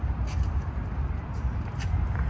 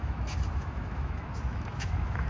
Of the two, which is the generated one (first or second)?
second